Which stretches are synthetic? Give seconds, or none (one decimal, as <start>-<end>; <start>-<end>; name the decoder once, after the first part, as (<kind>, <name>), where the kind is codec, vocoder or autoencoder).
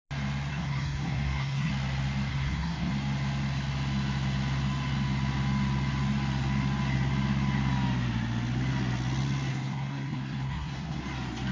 0.5-1.7 (codec, SNAC); 2.3-2.9; 9.5-11.0